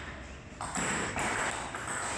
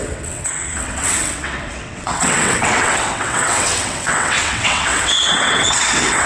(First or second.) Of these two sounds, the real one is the first